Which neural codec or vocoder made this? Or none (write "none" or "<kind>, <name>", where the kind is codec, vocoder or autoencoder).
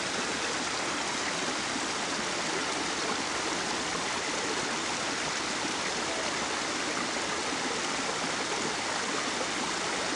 none